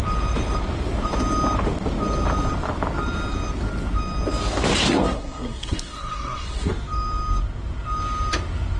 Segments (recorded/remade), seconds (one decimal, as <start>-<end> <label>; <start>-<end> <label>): 0.0-4.9 recorded; 4.9-6.7 remade; 6.7-8.8 recorded